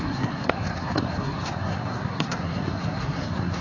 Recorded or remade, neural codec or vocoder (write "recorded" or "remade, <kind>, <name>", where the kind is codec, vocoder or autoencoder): remade, codec, SNAC